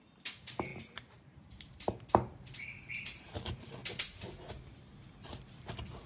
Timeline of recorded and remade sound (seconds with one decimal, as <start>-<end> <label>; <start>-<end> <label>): 0.0-3.8 remade; 3.8-6.1 recorded

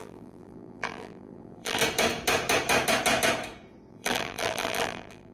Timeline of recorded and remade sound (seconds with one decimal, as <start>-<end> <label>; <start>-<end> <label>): 0.0-1.8 remade; 1.8-3.9 recorded; 3.9-5.3 remade

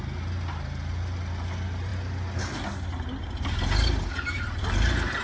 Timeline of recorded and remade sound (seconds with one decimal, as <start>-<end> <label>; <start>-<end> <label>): 0.0-5.2 recorded

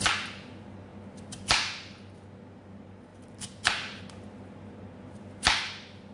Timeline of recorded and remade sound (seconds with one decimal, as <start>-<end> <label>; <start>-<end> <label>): 0.0-3.1 recorded; 3.1-4.0 remade; 4.0-6.1 recorded